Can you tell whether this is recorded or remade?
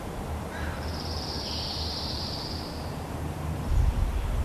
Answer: remade